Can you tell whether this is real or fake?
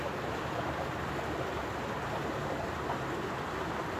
real